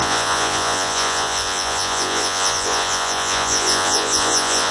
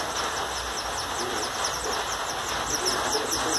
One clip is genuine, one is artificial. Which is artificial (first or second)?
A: first